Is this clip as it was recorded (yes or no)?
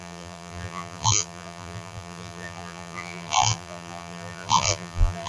no